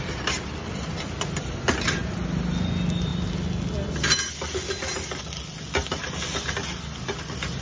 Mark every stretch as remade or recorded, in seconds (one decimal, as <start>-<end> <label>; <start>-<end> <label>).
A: 0.0-7.6 recorded